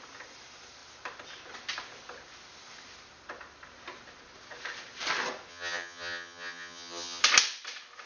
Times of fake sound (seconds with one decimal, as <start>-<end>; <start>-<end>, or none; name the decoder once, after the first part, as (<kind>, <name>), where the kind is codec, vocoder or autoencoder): 5.5-7.2 (vocoder, HiFi-GAN)